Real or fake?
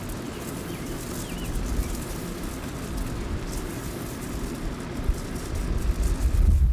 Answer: real